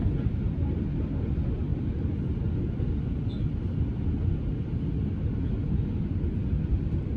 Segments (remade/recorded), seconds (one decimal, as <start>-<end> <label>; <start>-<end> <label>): 0.0-7.2 recorded